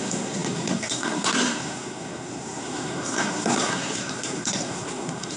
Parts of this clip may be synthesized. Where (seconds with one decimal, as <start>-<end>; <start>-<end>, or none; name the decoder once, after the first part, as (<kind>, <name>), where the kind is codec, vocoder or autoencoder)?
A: 0.0-5.4 (codec, SNAC)